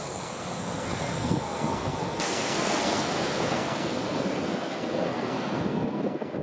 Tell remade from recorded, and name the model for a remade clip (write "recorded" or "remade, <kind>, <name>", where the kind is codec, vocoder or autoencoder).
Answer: remade, codec, SNAC